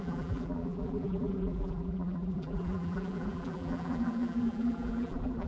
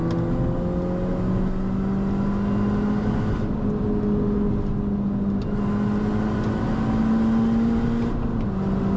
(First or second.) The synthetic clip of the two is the first